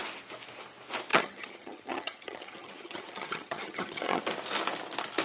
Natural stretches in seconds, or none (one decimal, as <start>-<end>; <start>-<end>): 0.0-1.1; 4.2-5.2